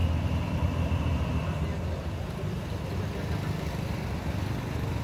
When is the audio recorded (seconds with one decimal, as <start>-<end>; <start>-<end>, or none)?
0.0-5.0